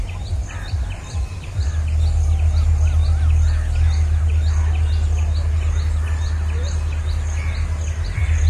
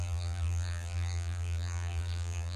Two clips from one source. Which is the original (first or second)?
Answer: first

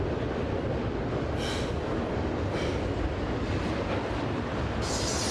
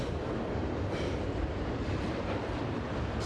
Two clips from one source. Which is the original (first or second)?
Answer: first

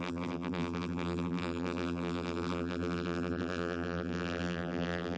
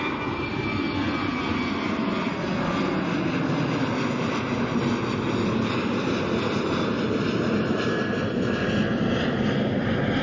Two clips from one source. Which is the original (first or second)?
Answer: second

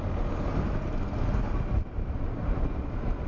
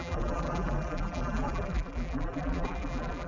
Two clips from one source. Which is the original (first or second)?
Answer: first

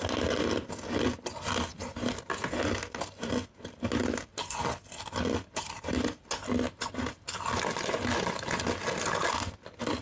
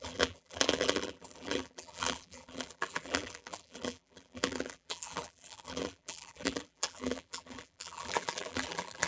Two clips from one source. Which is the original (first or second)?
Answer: first